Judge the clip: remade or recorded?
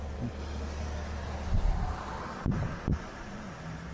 recorded